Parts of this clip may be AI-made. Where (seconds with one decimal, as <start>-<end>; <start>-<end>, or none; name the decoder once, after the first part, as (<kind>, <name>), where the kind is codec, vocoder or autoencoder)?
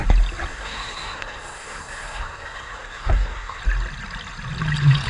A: 0.5-3.6 (codec, SNAC)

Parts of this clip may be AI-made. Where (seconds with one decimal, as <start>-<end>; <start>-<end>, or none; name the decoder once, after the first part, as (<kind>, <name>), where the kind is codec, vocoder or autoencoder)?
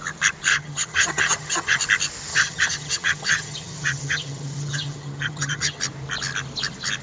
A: 0.5-1.8 (vocoder, HiFi-GAN); 2.3-5.8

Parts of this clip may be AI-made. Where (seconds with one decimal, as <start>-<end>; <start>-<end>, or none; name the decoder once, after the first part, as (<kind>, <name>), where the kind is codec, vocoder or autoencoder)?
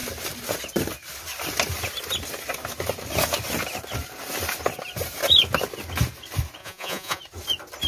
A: 6.6-7.2 (vocoder, Vocos)